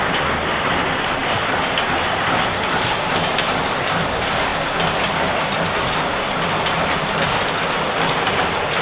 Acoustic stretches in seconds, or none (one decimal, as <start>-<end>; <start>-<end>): 0.0-8.8